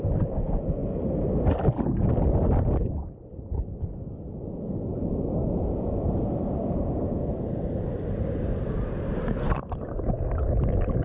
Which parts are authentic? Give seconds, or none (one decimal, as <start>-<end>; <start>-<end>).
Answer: 0.0-4.9; 7.2-11.0